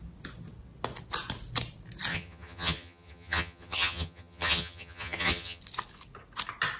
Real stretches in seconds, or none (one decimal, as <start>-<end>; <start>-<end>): 0.0-2.1; 5.6-6.8